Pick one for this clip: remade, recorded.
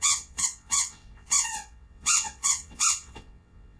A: remade